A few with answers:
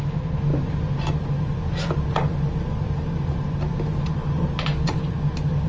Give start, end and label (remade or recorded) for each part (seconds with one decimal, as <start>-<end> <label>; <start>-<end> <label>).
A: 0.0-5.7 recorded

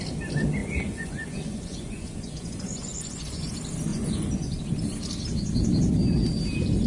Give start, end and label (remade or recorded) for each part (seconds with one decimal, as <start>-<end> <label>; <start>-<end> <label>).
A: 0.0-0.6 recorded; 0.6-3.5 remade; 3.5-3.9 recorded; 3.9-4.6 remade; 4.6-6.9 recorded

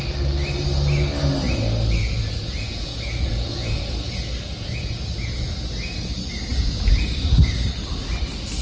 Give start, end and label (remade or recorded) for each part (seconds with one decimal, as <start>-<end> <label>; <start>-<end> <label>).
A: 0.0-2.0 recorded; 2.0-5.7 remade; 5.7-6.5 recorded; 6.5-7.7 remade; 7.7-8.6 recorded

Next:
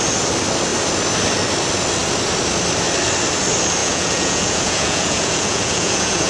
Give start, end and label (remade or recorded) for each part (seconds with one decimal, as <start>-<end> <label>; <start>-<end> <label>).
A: 0.0-3.8 recorded; 3.8-6.3 remade